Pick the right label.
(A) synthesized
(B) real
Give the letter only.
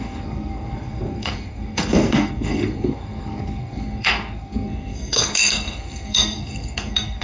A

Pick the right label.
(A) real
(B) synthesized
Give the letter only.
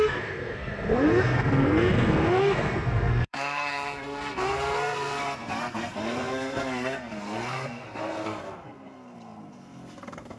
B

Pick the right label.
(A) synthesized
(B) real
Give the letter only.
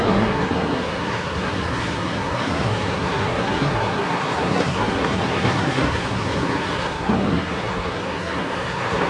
A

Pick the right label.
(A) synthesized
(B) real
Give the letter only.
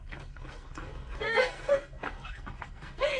A